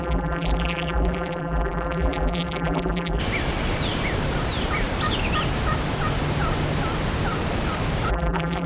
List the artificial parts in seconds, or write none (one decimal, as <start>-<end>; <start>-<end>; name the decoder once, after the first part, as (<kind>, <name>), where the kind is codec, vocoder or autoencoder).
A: 0.0-3.2 (vocoder, BigVGAN v2); 8.1-8.7